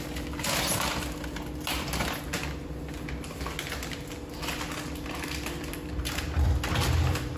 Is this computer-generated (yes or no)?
no